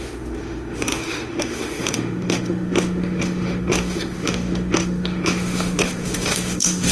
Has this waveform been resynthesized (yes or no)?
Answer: yes